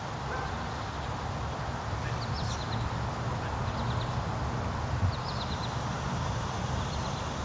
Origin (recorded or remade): recorded